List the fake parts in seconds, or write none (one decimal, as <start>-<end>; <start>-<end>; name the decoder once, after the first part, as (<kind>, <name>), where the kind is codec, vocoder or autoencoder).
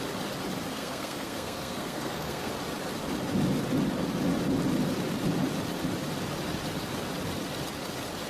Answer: 0.7-2.5 (codec, SNAC)